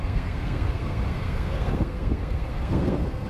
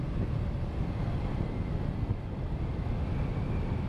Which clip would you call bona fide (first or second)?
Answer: second